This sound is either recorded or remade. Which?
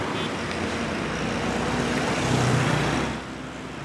recorded